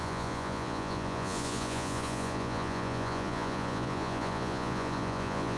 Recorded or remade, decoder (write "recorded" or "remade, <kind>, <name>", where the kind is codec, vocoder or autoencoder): remade, vocoder, Vocos